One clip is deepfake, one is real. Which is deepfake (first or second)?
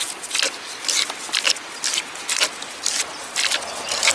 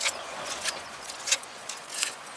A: second